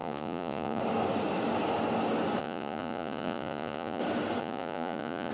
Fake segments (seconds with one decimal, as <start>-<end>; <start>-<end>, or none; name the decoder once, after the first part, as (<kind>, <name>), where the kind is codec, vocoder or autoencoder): 0.0-0.8 (vocoder, Vocos); 2.4-4.0; 4.4-5.3